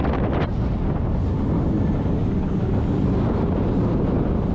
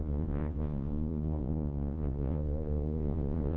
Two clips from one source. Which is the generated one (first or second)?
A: second